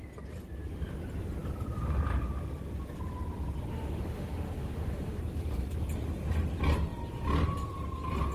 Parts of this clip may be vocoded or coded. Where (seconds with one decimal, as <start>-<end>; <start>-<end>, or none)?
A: 3.7-5.2